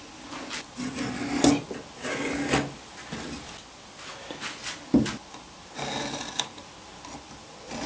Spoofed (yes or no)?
no